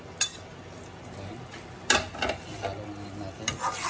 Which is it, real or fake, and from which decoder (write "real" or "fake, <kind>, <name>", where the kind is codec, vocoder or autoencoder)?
real